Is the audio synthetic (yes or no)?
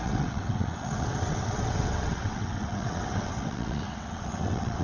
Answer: yes